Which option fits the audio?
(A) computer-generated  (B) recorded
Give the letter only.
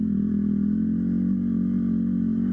B